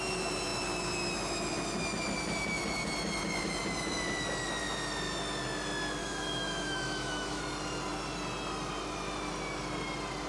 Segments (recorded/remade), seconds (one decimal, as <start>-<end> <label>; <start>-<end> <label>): 0.0-6.0 recorded; 6.0-7.4 remade; 7.4-10.3 recorded